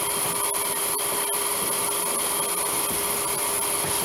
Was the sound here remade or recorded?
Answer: recorded